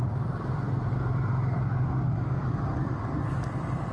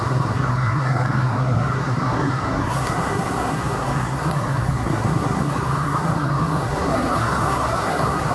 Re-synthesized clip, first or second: second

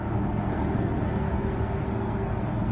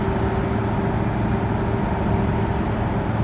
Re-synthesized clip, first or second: first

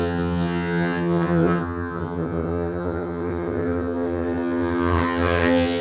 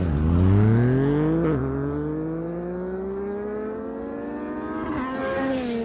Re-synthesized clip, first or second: first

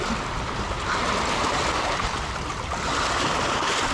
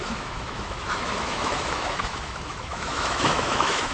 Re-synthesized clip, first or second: second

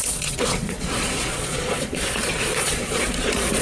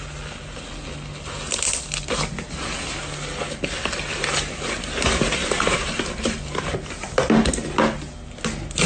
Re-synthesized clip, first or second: first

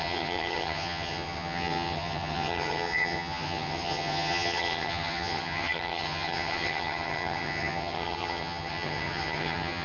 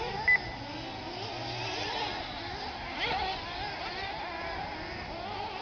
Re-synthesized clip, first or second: first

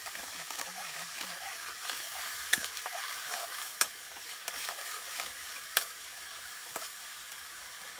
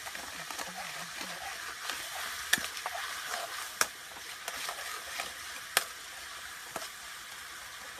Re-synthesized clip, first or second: first